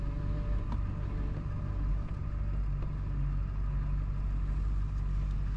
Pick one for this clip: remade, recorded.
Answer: recorded